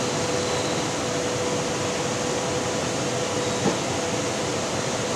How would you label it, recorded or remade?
recorded